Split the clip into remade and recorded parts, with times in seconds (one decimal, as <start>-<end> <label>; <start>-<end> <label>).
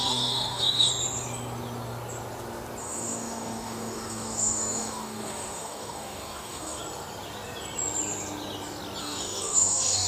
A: 0.0-0.9 remade; 0.9-2.8 recorded; 2.8-6.8 remade; 6.8-9.0 recorded; 9.0-10.1 remade